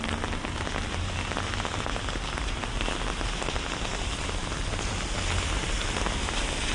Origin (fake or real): real